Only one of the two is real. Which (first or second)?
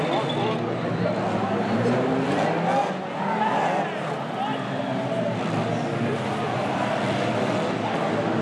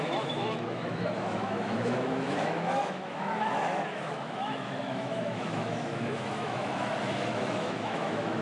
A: first